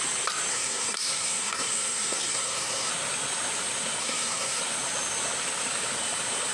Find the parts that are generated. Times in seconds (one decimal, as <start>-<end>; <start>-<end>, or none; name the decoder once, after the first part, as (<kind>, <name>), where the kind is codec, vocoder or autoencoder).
0.5-2.9 (codec, SNAC); 4.0-4.6